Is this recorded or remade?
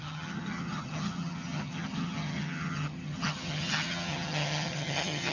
remade